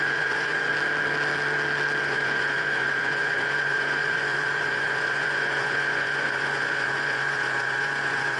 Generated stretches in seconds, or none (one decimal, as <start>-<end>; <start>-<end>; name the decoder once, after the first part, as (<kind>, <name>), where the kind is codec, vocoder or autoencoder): 0.0-0.7 (vocoder, Vocos); 2.0-8.4